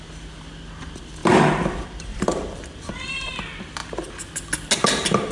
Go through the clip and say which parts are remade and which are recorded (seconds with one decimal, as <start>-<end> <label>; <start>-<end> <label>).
0.0-1.2 recorded; 1.2-3.4 remade; 3.4-5.3 recorded